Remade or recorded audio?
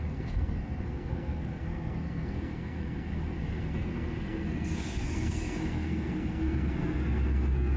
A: remade